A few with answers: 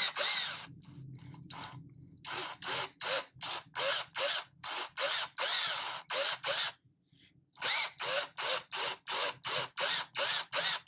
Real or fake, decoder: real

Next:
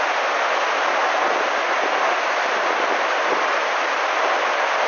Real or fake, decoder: real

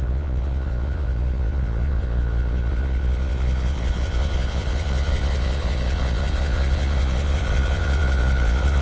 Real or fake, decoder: fake, vocoder, Vocos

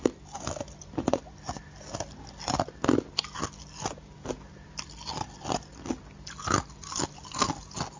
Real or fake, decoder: real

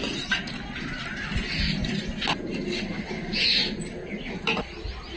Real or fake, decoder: real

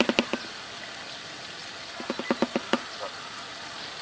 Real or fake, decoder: real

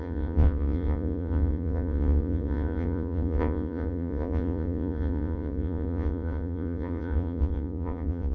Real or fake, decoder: fake, vocoder, Vocos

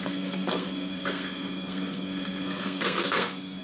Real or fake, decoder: fake, codec, SNAC